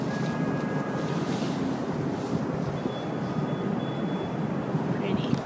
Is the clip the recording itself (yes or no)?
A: yes